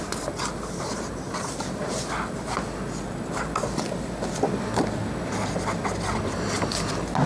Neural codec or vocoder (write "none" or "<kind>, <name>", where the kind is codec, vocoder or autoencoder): none